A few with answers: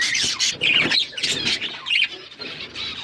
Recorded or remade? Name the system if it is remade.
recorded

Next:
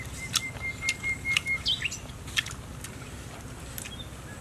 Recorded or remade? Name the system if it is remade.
recorded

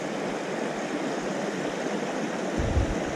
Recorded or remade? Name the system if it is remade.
recorded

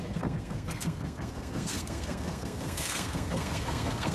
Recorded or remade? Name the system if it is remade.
remade, codec, SNAC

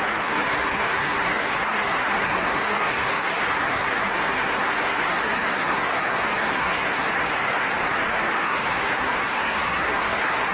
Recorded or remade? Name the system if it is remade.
remade, codec, SNAC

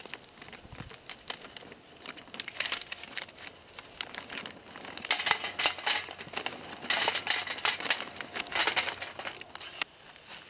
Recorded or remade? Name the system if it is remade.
recorded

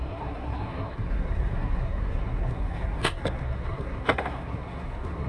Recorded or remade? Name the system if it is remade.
remade, codec, SNAC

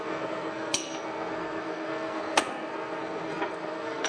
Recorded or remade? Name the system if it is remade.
remade, codec, SNAC